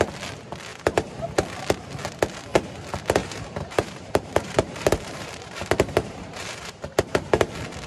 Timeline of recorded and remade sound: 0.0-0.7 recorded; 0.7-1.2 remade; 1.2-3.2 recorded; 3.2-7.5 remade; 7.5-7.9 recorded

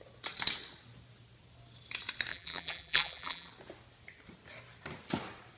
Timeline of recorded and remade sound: 0.0-2.3 recorded; 2.3-3.5 remade; 3.5-5.6 recorded